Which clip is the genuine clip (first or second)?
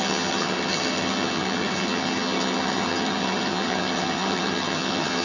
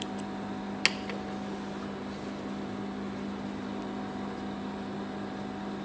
second